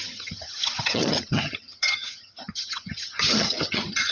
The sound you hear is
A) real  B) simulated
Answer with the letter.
B